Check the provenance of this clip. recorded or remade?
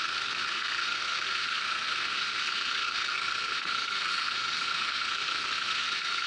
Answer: remade